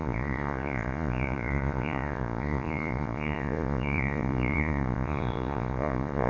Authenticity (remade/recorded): remade